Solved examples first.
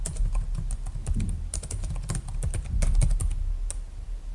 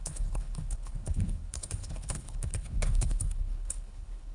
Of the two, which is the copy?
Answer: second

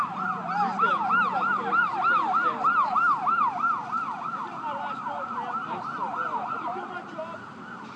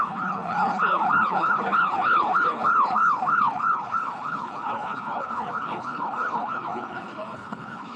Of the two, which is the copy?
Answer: second